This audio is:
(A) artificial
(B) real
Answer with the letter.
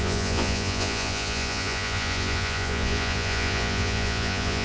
A